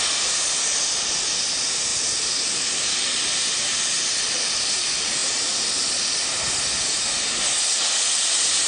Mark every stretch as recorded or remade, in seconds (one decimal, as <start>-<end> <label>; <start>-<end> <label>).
0.0-1.9 recorded; 1.9-2.7 remade; 2.7-8.7 recorded